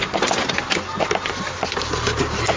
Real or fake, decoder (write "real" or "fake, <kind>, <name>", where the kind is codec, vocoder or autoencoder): real